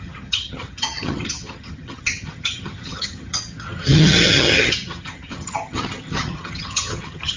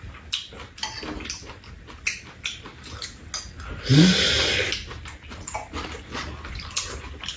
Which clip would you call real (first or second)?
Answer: second